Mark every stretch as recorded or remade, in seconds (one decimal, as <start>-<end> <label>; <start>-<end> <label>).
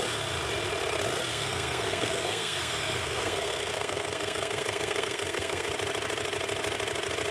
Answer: 0.0-1.3 recorded; 1.3-5.7 remade; 5.7-7.3 recorded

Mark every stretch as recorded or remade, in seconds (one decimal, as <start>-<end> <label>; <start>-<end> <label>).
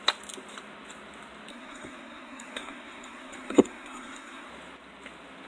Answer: 0.0-1.5 recorded; 1.5-4.5 remade; 4.5-5.5 recorded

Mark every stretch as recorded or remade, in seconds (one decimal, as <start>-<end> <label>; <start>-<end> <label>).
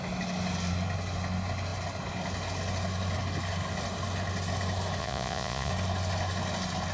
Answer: 0.0-5.0 recorded; 5.0-5.7 remade; 5.7-6.9 recorded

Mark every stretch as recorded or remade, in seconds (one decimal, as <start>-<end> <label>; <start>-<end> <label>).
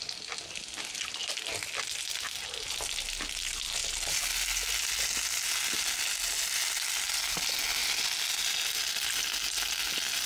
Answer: 0.0-1.2 recorded; 1.2-2.3 remade; 2.3-7.8 recorded; 7.8-8.8 remade; 8.8-10.3 recorded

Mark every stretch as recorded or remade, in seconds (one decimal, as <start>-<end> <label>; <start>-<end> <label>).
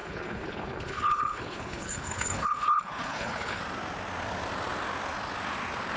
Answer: 0.0-3.6 remade; 3.6-6.0 recorded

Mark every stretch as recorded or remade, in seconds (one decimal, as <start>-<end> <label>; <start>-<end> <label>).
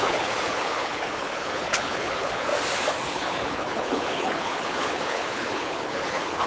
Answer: 0.0-2.5 remade; 2.5-3.1 recorded; 3.1-6.5 remade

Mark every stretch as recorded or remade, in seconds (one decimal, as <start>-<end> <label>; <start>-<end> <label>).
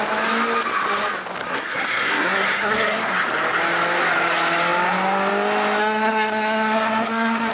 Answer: 0.0-1.4 recorded; 1.4-3.1 remade; 3.1-5.8 recorded; 5.8-7.5 remade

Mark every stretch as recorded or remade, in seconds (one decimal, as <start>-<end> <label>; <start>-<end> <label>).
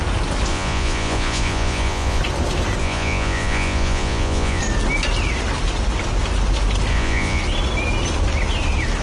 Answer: 0.0-0.5 recorded; 0.5-2.2 remade; 2.2-2.8 recorded; 2.8-4.6 remade; 4.6-6.9 recorded; 6.9-7.4 remade; 7.4-9.0 recorded